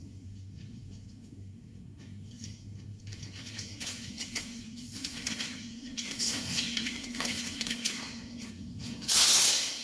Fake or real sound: fake